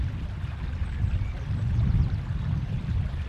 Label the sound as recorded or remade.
recorded